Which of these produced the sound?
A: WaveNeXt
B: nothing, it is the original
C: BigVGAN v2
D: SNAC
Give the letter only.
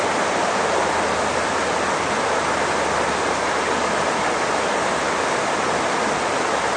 B